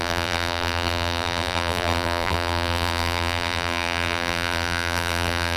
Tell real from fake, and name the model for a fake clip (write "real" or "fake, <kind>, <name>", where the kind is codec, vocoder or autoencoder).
fake, vocoder, BigVGAN v2